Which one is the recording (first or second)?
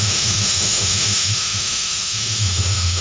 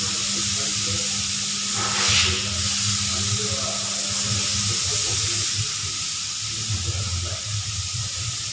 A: second